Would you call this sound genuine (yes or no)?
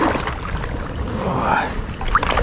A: yes